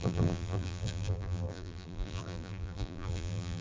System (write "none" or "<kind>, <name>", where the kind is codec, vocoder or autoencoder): vocoder, BigVGAN v2